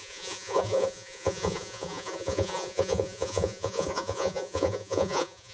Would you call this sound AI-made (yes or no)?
yes